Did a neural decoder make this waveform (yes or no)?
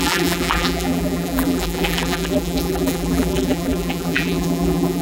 yes